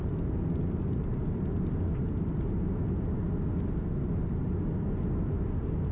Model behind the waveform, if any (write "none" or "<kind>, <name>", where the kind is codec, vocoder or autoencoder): none